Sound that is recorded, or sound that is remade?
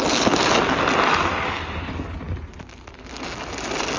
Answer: recorded